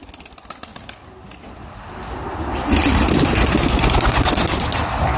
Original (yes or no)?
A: yes